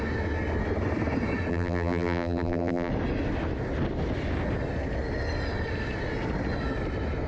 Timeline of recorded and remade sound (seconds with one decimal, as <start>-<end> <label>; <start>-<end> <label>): 0.0-1.5 recorded; 1.5-2.9 remade; 2.9-7.3 recorded